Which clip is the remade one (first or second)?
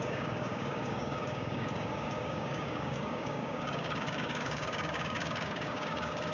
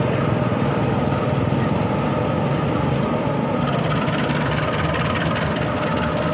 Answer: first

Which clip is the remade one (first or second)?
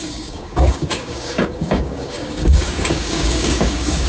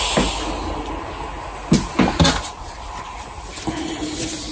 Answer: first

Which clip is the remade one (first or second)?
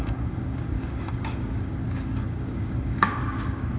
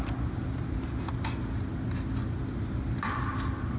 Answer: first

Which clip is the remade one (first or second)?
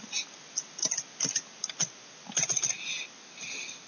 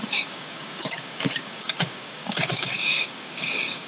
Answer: second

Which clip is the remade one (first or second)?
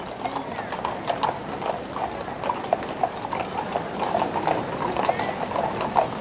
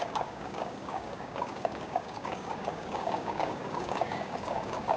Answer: second